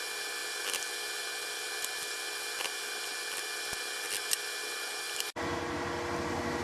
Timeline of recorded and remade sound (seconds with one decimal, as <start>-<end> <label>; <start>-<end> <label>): 0.0-6.6 recorded

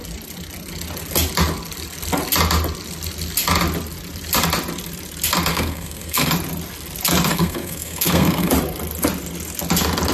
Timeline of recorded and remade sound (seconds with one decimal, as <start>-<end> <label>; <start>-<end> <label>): 0.0-5.5 recorded; 5.5-6.3 remade; 6.3-7.3 recorded; 7.3-8.5 remade; 8.5-10.1 recorded

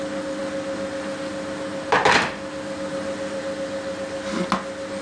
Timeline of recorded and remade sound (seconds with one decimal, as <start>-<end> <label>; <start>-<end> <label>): 0.0-5.0 recorded

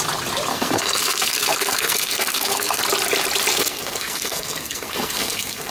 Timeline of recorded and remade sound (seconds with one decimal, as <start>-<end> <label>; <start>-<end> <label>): 0.0-0.5 recorded; 0.5-2.8 remade; 2.8-3.5 recorded; 3.5-5.7 remade

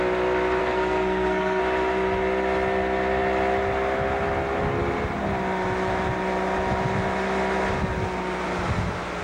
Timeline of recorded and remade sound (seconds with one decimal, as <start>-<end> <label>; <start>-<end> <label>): 0.0-0.6 recorded; 0.6-1.6 remade; 1.6-9.2 recorded

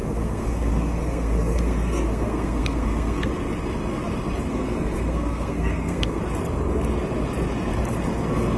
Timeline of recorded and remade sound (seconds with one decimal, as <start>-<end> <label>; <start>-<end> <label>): 0.0-3.3 remade; 3.3-4.5 recorded; 4.5-6.2 remade; 6.2-8.6 recorded

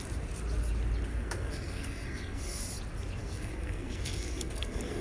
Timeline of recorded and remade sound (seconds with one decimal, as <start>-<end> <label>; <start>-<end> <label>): 0.0-1.1 recorded; 1.1-2.6 remade; 2.6-3.2 recorded; 3.2-5.0 remade